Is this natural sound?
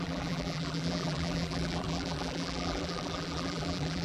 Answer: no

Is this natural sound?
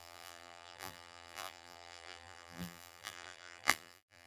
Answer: no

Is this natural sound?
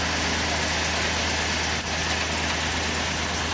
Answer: yes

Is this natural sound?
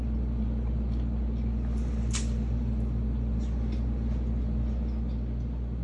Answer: yes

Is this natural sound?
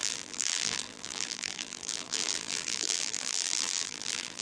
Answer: no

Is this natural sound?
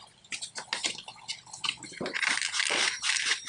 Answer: yes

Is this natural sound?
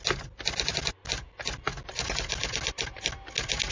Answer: yes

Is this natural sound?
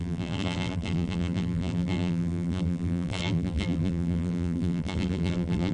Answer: no